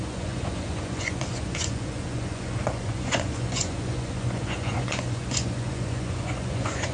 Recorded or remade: remade